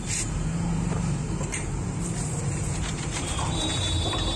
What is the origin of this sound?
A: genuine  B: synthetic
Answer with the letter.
B